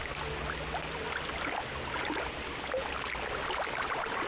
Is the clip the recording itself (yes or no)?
yes